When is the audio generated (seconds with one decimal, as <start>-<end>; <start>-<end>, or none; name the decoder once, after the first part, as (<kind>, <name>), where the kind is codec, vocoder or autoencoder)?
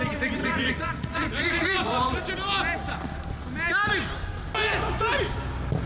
0.4-2.2 (vocoder, Vocos)